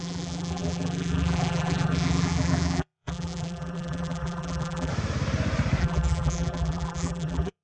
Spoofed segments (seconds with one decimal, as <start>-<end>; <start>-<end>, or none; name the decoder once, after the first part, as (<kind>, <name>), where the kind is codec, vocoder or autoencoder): 0.0-4.9 (vocoder, BigVGAN v2); 5.8-7.6